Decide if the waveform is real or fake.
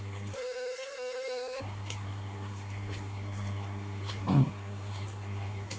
fake